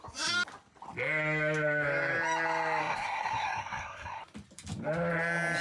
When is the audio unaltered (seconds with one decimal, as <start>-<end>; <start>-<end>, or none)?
0.0-2.8; 4.2-5.6